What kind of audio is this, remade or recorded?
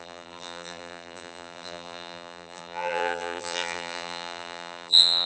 remade